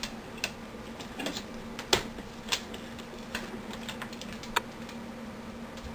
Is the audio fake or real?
real